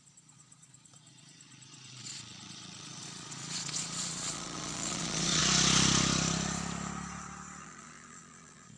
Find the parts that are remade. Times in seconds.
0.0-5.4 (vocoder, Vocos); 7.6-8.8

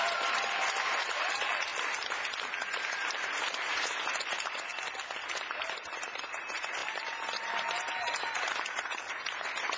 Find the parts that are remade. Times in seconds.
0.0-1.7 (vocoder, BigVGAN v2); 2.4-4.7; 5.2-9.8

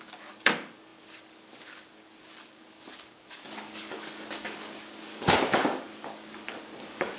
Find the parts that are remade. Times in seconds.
0.0-7.2 (codec, DAC)

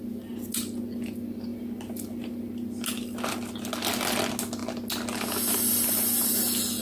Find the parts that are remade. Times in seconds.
none

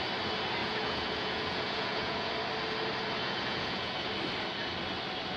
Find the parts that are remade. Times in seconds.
0.6-2.3 (vocoder, Vocos); 3.2-4.1

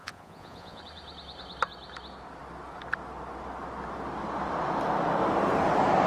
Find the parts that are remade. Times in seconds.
0.0-0.8 (vocoder, Vocos)

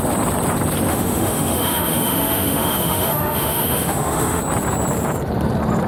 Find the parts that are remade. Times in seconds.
0.9-4.4 (autoencoder, DAC-VAE)

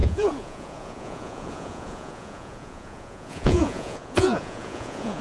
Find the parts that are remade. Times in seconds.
0.0-5.2 (vocoder, Vocos)